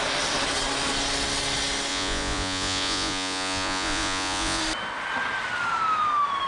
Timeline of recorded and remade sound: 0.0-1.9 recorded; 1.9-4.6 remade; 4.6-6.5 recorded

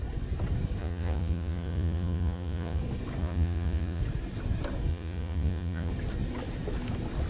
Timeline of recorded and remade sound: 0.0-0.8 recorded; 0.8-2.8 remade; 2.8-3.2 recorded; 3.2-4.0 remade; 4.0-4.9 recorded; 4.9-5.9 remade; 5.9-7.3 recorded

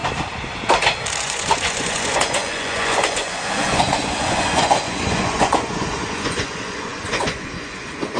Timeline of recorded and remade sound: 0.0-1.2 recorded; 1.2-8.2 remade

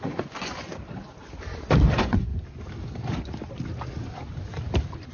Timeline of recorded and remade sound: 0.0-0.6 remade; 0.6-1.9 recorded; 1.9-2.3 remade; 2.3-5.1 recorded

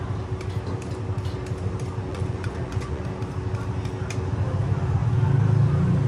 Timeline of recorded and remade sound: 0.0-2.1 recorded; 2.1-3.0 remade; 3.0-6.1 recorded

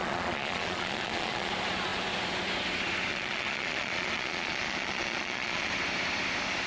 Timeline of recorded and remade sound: 0.0-1.5 remade; 1.5-3.1 recorded; 3.1-5.7 remade; 5.7-6.7 recorded